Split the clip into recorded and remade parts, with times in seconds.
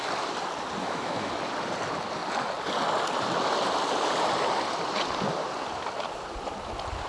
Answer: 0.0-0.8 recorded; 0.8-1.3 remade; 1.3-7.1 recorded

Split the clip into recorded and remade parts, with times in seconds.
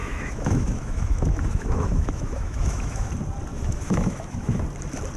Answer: 0.0-3.1 remade; 3.1-3.5 recorded; 3.5-4.6 remade; 4.6-5.2 recorded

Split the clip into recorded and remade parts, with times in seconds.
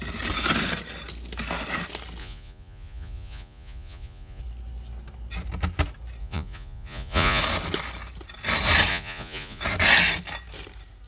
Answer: 0.0-2.2 recorded; 2.2-4.4 remade; 4.4-6.2 recorded; 6.2-7.4 remade; 7.4-8.9 recorded; 8.9-9.6 remade; 9.6-11.1 recorded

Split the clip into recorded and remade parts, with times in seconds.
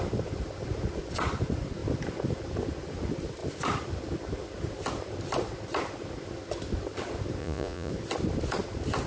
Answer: 0.0-7.4 recorded; 7.4-7.9 remade; 7.9-9.1 recorded